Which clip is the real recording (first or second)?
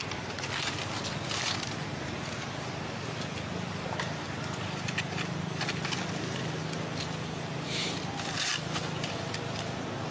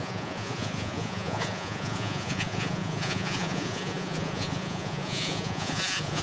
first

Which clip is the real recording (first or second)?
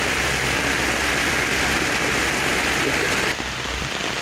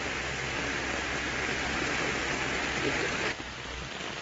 second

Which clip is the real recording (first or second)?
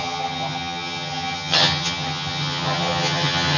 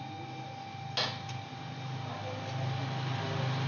second